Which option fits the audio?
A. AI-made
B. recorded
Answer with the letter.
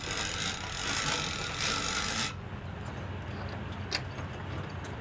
B